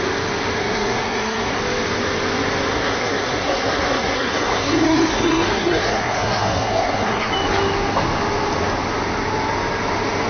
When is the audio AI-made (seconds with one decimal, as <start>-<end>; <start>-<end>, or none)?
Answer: 0.6-1.6; 2.7-7.3